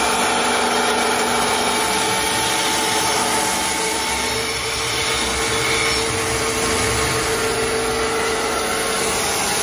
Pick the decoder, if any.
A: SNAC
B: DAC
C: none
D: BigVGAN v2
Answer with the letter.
C